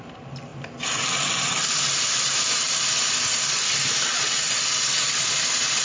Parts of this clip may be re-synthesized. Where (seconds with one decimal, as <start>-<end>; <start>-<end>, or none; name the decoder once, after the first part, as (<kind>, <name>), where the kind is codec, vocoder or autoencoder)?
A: none